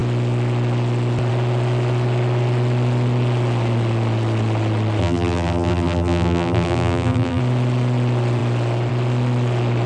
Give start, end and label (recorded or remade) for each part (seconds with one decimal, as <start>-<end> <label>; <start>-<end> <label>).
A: 0.0-5.0 recorded; 5.0-7.4 remade; 7.4-9.9 recorded